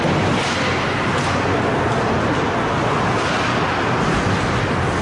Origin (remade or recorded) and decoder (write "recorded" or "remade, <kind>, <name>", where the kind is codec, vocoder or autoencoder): recorded